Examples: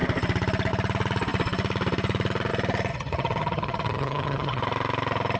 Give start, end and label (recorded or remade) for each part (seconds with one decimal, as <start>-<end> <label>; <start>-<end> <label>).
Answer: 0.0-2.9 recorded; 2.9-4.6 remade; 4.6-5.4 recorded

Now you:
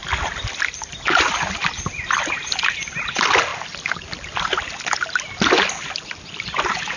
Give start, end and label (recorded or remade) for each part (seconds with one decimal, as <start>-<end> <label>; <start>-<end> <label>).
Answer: 0.0-7.0 recorded

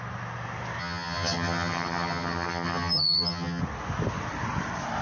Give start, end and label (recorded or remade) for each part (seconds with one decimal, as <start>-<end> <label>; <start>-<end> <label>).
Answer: 0.0-0.8 recorded; 0.8-3.6 remade; 3.6-5.0 recorded